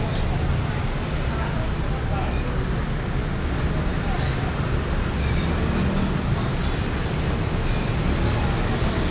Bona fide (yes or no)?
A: yes